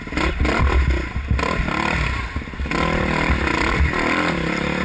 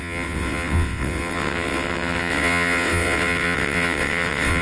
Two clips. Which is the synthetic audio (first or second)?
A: second